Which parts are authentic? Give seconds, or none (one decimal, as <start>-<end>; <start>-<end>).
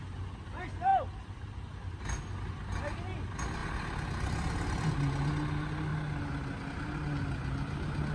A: 0.0-0.9; 2.0-3.6; 4.9-8.1